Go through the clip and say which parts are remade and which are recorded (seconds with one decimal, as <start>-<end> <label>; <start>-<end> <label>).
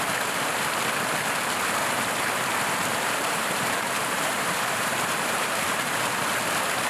0.0-2.9 recorded; 2.9-6.0 remade; 6.0-6.9 recorded